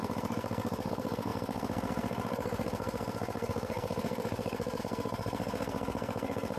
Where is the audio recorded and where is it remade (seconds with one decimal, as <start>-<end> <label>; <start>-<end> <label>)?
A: 0.0-6.6 remade